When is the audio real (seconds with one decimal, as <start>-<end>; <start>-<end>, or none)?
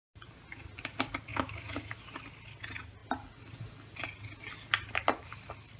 0.0-1.3; 2.0-5.8